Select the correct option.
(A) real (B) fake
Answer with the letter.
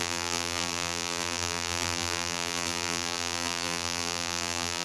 B